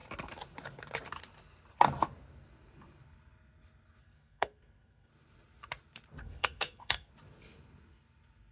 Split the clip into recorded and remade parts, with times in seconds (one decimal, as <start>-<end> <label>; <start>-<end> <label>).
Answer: 0.0-4.0 recorded; 4.0-5.1 remade; 5.1-6.2 recorded; 6.2-7.1 remade; 7.1-8.5 recorded